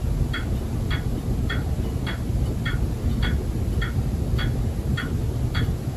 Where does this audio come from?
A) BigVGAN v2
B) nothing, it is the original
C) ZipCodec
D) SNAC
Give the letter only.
B